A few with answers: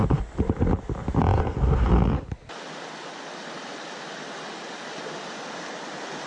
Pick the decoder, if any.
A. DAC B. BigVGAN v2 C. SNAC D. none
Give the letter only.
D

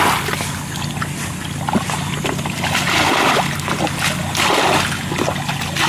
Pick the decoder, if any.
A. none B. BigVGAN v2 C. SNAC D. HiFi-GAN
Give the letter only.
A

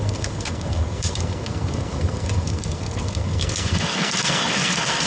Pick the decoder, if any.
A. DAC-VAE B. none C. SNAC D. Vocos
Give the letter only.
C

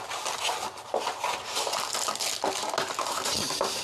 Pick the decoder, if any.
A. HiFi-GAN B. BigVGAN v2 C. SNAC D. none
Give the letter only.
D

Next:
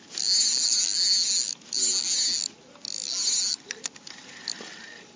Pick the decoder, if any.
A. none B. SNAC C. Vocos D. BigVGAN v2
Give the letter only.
A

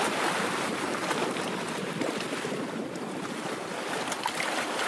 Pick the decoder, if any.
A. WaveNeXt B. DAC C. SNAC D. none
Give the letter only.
D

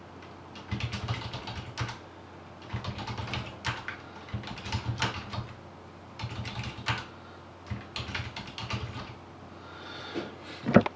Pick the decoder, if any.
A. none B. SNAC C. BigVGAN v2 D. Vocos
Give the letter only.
A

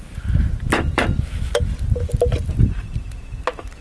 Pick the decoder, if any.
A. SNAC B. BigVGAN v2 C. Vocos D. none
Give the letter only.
D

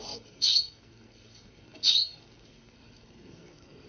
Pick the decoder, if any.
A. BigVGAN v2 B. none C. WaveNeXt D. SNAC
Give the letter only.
D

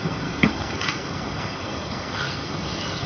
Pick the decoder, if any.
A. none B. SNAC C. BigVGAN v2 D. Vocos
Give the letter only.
B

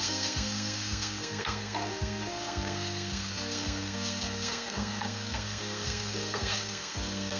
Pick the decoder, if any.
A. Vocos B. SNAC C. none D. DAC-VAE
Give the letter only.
B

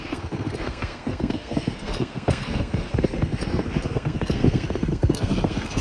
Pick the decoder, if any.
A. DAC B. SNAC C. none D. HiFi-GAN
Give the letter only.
B